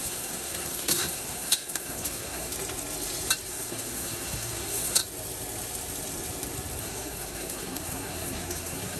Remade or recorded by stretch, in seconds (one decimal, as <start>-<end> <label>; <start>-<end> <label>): 0.0-2.5 remade; 2.5-3.5 recorded; 3.5-5.0 remade; 5.0-6.8 recorded; 6.8-9.0 remade